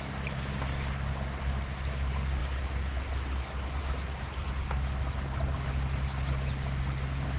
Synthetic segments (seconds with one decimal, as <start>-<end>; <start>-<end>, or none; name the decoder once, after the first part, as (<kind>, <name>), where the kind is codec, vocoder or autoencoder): none